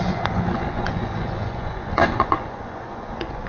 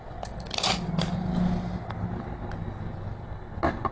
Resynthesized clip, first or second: first